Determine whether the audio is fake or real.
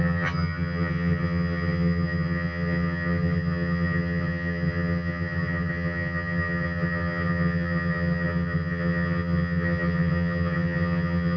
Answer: fake